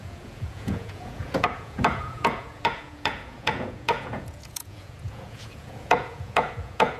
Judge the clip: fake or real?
fake